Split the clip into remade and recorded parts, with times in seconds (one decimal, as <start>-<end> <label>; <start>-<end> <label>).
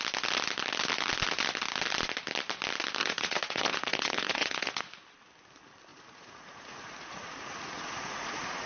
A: 0.0-3.0 recorded; 3.0-4.8 remade; 4.8-5.9 recorded; 5.9-8.7 remade